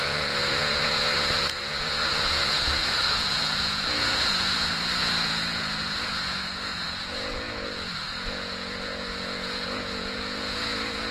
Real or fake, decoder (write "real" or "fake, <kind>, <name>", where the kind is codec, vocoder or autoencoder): fake, vocoder, Vocos